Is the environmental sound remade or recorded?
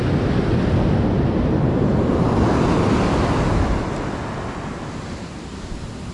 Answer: recorded